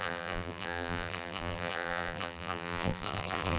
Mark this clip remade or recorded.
remade